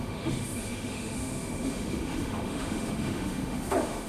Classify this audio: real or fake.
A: fake